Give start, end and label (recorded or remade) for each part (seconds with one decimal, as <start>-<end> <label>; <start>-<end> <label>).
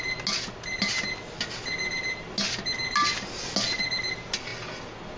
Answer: 0.0-5.2 recorded